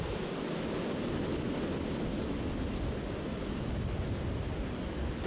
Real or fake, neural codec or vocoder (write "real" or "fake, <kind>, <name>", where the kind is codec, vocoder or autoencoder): real